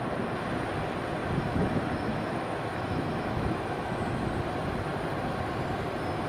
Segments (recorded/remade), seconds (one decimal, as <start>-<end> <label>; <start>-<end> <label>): 0.0-1.2 recorded; 1.2-4.3 remade; 4.3-6.3 recorded